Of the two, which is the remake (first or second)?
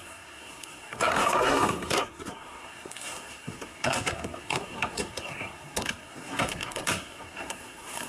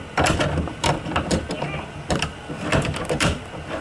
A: first